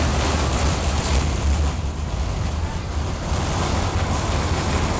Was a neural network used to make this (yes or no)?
no